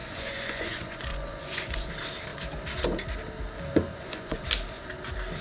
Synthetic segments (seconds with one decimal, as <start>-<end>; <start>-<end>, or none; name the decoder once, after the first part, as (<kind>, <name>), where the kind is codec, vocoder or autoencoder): 0.0-1.9 (vocoder, Vocos); 3.9-4.4